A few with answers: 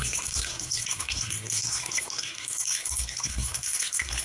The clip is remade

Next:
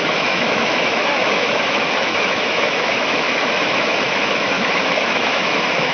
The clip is remade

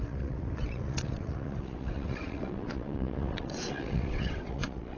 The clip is remade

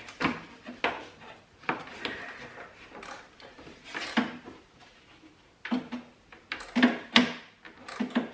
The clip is recorded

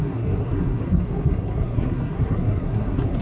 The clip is remade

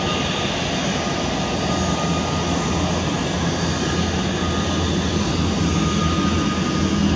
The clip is recorded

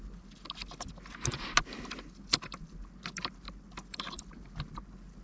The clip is recorded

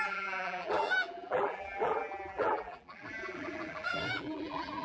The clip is remade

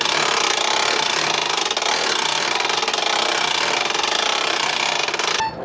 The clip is recorded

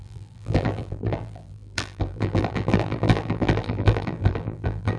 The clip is remade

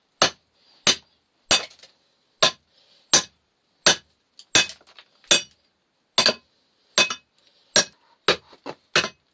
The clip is recorded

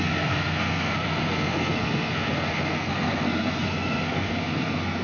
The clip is remade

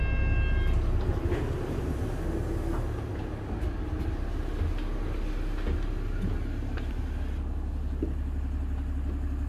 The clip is recorded